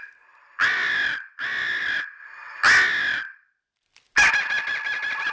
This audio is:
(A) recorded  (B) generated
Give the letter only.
A